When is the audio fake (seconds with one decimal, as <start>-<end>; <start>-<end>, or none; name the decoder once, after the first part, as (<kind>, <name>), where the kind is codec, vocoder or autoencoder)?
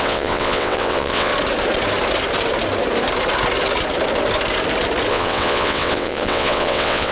0.0-1.3 (vocoder, WaveNeXt); 5.1-7.1